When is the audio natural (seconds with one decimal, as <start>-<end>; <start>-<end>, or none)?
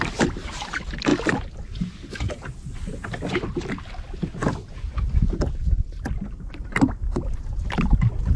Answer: 0.0-8.4